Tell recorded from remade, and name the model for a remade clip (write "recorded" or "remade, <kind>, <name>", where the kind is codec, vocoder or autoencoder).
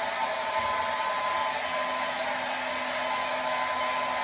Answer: recorded